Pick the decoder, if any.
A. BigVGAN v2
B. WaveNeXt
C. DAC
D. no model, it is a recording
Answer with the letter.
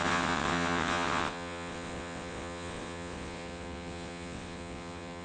B